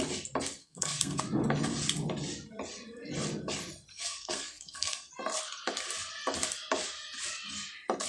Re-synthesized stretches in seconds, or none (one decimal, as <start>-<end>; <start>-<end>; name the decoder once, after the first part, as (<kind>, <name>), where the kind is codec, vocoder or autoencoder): 0.6-1.2 (codec, SNAC); 3.9-5.1